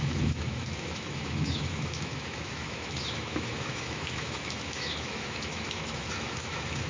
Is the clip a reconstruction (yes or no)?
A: yes